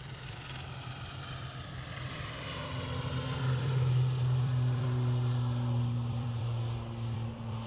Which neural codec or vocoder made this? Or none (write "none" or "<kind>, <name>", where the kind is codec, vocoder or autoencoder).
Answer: vocoder, BigVGAN v2